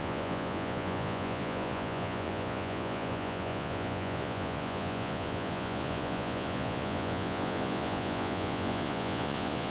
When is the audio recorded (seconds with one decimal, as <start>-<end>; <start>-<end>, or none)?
none

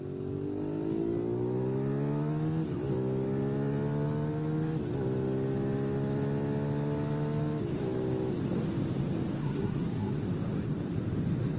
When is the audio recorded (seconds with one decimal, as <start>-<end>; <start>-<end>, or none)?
0.0-9.4; 10.1-11.6

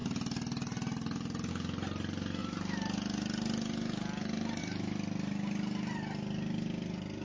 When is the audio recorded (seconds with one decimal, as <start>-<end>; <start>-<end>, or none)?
0.0-7.2

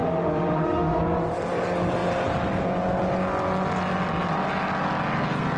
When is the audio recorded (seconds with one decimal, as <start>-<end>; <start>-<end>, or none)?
1.0-5.6

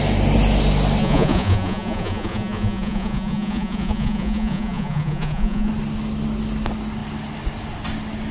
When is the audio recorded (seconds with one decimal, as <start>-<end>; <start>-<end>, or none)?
0.0-1.0; 5.7-8.3